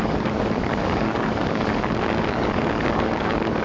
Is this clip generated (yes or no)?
yes